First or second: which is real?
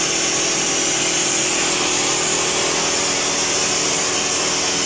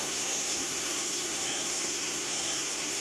first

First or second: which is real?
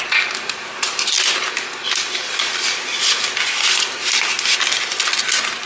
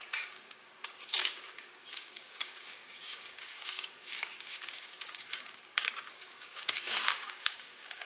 first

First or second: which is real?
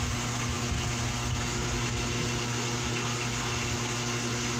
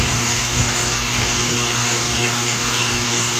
first